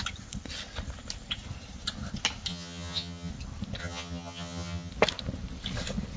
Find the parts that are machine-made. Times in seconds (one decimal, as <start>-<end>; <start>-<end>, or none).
2.5-3.3; 3.8-4.9